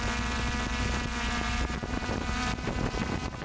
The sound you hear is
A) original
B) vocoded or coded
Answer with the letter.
A